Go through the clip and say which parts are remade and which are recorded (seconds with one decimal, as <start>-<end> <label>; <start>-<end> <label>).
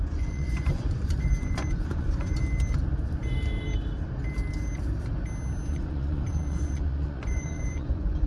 0.0-2.4 remade; 2.4-5.7 recorded; 5.7-8.3 remade